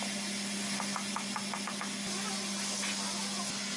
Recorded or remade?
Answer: recorded